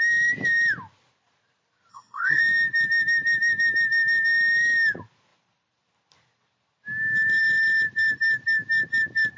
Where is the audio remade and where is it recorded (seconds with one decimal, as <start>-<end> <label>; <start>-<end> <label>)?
0.0-1.9 recorded; 1.9-2.4 remade; 2.4-9.4 recorded